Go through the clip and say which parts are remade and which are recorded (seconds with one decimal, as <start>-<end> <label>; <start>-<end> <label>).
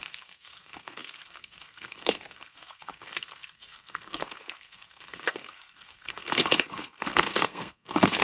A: 0.0-8.2 remade